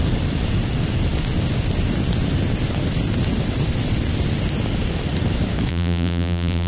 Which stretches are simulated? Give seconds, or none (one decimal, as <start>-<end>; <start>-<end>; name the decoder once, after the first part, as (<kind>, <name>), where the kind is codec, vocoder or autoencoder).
5.7-6.7 (vocoder, BigVGAN v2)